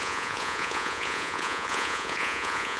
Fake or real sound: fake